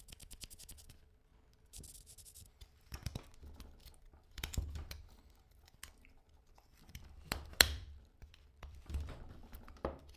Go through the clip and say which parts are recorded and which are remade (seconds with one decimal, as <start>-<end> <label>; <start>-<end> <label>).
0.0-1.3 remade; 1.3-2.2 recorded; 2.2-3.0 remade; 3.0-4.0 recorded; 4.0-10.2 remade